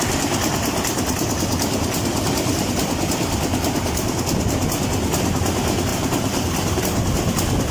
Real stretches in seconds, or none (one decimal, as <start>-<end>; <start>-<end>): 0.0-2.1; 2.7-5.9; 6.8-7.7

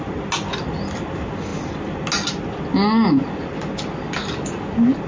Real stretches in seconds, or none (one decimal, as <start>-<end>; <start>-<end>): 0.0-5.1

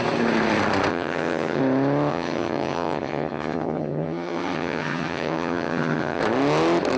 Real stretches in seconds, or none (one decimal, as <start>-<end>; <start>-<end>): 0.0-0.9; 1.6-2.1; 6.2-7.0

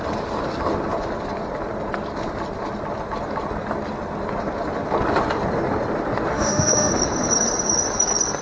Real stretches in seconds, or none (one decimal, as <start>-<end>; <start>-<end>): 0.0-6.3; 6.9-8.4